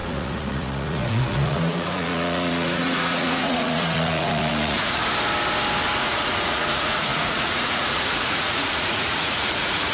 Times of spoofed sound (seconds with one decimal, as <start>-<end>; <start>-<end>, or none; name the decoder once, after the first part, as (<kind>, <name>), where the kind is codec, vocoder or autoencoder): 0.0-5.0 (vocoder, Vocos); 6.0-9.9